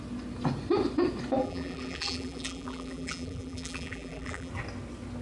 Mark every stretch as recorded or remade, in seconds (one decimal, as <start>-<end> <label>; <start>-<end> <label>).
0.0-1.4 recorded; 1.4-4.5 remade; 4.5-5.2 recorded